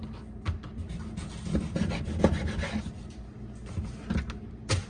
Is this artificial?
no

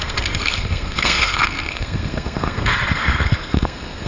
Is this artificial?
yes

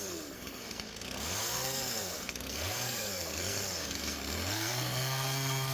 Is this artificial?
yes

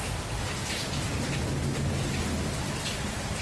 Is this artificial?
no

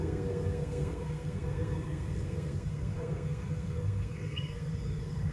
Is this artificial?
yes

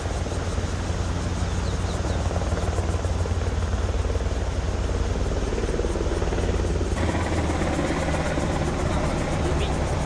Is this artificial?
no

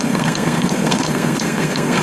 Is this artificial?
yes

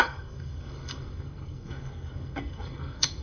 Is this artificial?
yes